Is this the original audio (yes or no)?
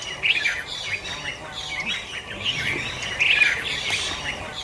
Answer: yes